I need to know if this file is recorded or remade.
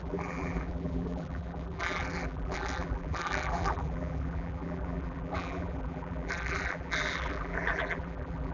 remade